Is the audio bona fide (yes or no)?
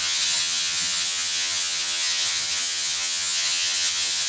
no